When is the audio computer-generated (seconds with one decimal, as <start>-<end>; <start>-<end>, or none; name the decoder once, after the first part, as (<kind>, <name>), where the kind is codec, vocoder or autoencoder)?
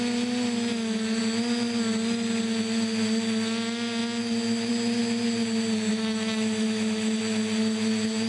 0.7-1.2 (autoencoder, DAC-VAE); 5.9-7.2